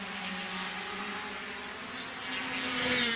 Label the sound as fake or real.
real